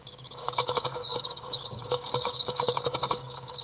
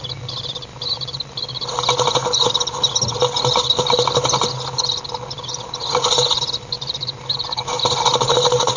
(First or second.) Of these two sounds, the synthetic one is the first